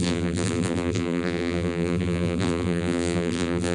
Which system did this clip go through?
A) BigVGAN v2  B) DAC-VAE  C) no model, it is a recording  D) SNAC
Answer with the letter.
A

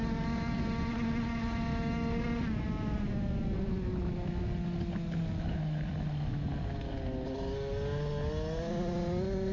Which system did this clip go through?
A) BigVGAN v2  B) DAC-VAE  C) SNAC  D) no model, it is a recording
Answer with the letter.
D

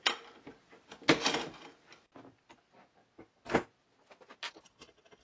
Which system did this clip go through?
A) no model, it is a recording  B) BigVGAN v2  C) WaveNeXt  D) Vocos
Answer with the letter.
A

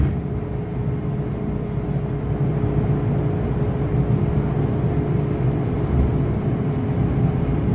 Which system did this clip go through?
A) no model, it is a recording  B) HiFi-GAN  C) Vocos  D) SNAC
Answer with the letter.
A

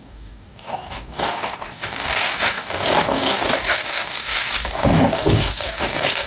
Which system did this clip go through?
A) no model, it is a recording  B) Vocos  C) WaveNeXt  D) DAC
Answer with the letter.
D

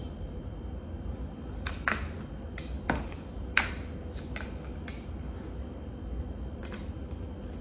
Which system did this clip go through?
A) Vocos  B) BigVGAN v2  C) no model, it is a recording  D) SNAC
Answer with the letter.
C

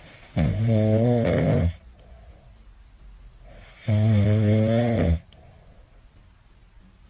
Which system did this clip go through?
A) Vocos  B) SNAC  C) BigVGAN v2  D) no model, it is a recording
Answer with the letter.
D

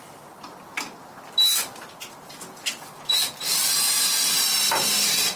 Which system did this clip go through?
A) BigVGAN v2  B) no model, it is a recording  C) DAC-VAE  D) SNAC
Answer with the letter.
B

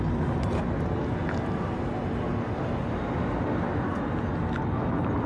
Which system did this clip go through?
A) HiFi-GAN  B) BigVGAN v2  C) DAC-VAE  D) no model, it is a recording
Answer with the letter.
D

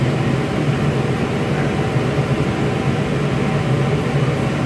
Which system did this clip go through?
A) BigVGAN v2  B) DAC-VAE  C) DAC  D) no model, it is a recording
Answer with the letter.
D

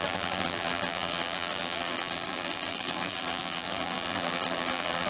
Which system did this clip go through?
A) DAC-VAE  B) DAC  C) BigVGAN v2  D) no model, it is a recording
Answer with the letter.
C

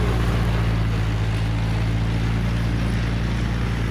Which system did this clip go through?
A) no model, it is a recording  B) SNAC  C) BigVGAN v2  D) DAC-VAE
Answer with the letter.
C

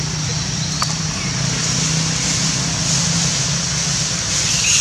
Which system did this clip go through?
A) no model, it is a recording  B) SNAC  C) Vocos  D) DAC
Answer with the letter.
A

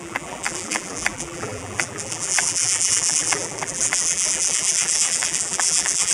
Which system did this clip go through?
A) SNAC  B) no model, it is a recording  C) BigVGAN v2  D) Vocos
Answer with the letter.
C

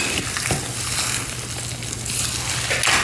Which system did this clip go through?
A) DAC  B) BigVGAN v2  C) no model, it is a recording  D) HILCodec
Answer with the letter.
C